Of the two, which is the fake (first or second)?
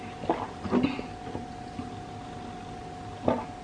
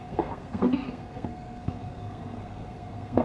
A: second